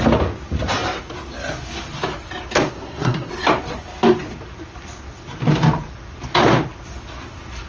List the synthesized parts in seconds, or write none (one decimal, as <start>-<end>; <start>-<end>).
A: 2.7-3.3